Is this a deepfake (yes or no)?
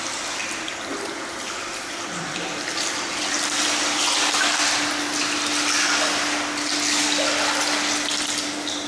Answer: no